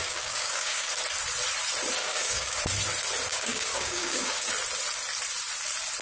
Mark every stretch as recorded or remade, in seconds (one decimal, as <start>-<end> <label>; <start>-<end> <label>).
0.0-0.9 remade; 0.9-2.0 recorded; 2.0-2.6 remade; 2.6-3.3 recorded; 3.3-4.5 remade; 4.5-6.0 recorded